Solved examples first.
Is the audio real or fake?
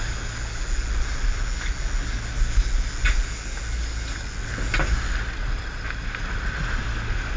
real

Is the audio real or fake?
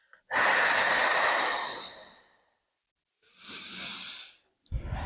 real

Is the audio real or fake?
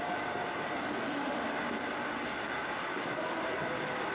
fake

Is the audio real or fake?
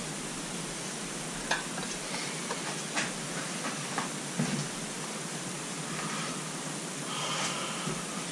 fake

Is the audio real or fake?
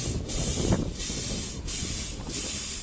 real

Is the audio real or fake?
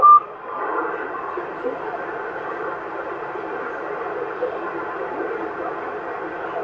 real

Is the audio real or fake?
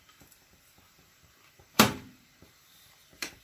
fake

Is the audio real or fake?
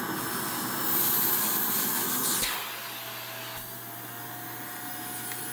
real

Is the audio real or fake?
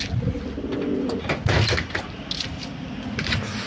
real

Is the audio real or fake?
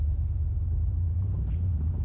fake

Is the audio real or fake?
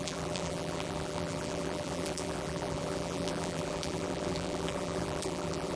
fake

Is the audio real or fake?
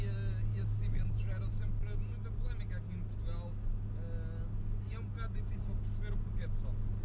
real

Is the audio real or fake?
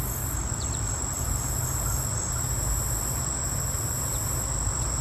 real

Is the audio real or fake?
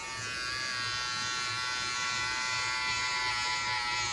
real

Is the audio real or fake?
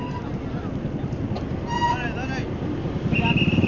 real